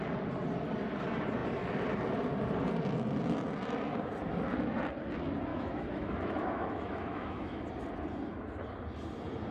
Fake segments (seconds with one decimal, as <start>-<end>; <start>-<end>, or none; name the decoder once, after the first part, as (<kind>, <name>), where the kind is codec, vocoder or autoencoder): 5.5-7.6 (autoencoder, DAC-VAE)